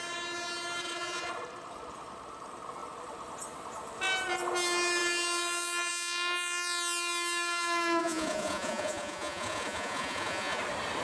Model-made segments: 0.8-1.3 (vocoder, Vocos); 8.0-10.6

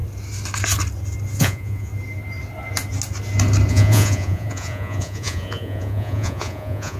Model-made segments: 1.4-1.9 (vocoder, Vocos); 3.7-7.0